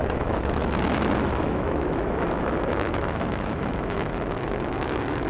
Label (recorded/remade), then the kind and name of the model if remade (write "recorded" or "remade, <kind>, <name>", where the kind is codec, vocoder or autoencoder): remade, autoencoder, DAC-VAE